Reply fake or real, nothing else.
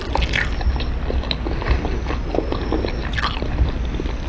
real